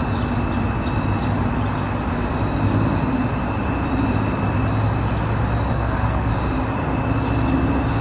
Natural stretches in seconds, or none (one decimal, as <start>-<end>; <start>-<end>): 0.0-5.7; 6.3-8.0